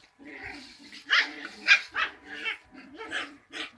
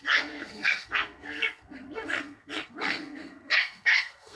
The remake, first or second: second